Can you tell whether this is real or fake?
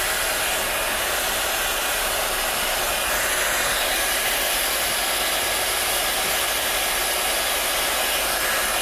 real